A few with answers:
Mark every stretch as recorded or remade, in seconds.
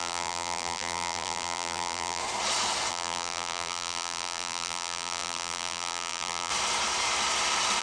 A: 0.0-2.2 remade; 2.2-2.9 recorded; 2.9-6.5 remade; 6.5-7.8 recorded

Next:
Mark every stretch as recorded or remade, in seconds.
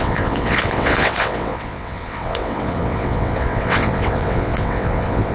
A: 0.0-5.3 remade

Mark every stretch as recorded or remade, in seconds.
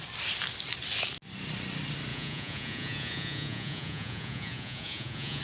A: 0.0-2.1 recorded; 2.1-5.4 remade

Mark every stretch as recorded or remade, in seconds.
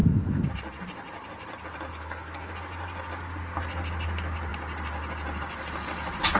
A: 0.0-0.5 remade; 0.5-1.9 recorded; 1.9-2.5 remade; 2.5-6.4 recorded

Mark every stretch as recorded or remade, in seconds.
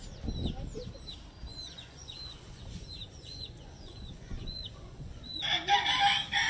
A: 0.0-1.5 recorded; 1.5-5.4 remade; 5.4-6.5 recorded